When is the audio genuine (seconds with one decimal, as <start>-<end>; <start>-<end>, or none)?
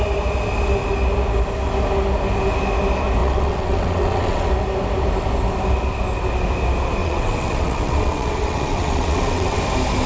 0.0-3.2; 4.5-7.0; 9.6-10.1